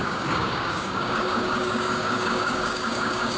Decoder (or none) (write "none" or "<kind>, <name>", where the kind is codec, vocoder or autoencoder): codec, DAC